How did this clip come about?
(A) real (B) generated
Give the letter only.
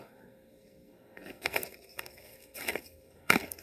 B